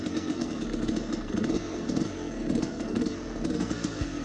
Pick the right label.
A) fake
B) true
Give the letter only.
A